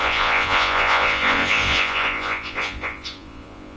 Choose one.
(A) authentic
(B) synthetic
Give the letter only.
B